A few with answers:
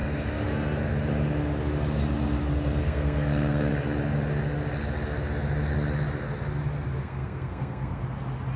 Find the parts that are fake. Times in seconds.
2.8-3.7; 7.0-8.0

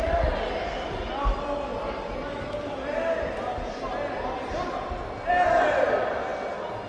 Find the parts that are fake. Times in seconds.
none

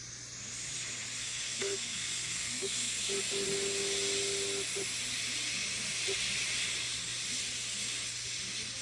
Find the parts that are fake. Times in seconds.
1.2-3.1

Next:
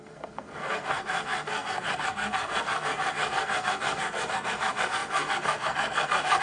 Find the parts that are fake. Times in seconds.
0.0-6.4

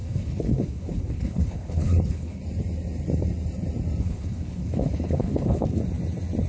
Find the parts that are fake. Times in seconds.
0.0-2.4; 4.0-5.8